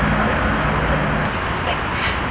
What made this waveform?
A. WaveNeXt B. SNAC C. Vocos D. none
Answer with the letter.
D